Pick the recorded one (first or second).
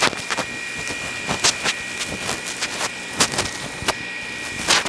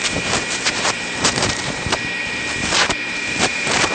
first